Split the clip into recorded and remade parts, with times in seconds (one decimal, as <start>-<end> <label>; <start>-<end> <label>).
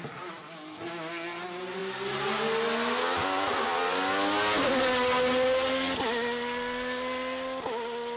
0.0-8.2 recorded